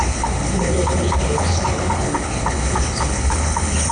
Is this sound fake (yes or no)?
yes